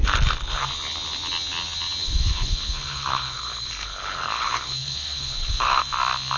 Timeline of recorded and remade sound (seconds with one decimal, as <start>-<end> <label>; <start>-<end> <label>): 0.0-2.0 recorded; 2.0-5.8 remade; 5.8-6.4 recorded

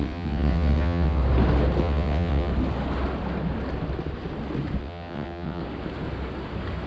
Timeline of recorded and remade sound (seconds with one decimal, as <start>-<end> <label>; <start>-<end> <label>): 0.0-1.2 remade; 1.2-1.8 recorded; 1.8-2.5 remade; 2.5-4.8 recorded; 4.8-5.6 remade; 5.6-6.9 recorded